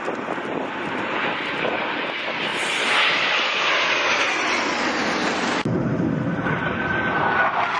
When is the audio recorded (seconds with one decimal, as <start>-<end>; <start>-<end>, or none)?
0.0-7.8